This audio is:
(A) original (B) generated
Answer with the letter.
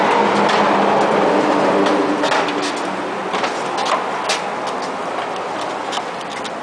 A